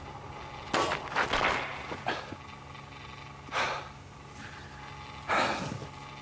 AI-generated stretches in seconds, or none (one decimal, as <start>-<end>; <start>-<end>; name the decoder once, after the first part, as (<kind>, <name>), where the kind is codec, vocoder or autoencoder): none